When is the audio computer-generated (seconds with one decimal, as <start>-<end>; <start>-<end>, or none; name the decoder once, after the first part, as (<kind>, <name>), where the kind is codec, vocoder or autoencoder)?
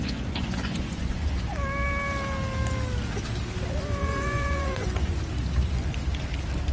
0.0-1.5 (vocoder, Vocos); 4.0-5.2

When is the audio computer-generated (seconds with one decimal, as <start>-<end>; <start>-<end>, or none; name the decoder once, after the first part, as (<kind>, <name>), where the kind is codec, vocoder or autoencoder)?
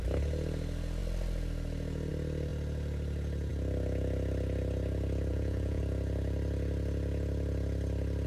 5.3-5.8 (vocoder, Vocos)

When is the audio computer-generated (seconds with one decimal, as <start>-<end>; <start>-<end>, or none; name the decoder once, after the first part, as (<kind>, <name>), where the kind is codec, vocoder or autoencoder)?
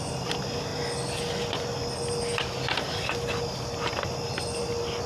none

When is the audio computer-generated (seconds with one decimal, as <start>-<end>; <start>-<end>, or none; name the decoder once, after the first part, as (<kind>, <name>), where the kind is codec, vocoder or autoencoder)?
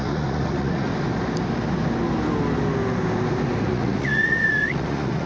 0.0-0.9 (vocoder, Vocos); 3.6-5.3